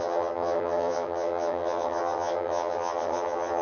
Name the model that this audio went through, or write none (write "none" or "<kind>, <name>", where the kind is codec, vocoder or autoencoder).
vocoder, HiFi-GAN